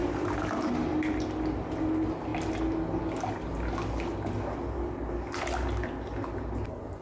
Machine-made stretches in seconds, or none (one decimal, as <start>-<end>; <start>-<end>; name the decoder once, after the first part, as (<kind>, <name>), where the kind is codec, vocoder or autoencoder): none